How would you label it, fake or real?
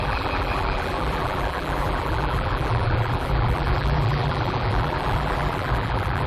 fake